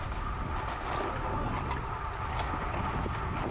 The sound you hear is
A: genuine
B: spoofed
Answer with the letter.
A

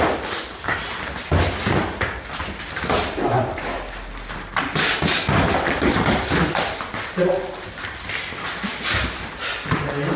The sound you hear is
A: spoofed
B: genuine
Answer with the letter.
B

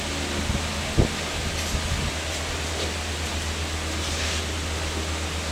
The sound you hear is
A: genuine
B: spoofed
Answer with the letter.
A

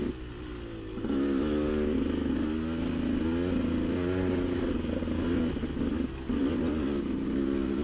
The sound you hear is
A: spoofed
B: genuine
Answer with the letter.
B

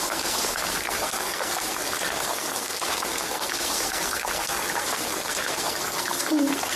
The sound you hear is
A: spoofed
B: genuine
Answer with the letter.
A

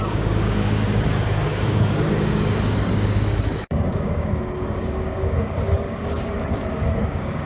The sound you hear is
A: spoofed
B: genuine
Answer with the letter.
A